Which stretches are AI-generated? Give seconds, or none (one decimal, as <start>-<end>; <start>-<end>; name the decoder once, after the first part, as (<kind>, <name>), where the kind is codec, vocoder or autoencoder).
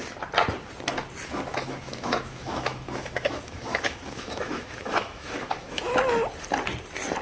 1.5-5.8 (autoencoder, DAC-VAE)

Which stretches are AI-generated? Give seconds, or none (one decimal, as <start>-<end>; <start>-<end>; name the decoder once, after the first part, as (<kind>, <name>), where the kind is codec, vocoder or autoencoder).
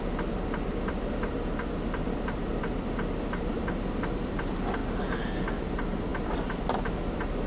0.0-4.8 (vocoder, BigVGAN v2); 5.6-7.5